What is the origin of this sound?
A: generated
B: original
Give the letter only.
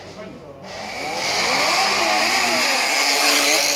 B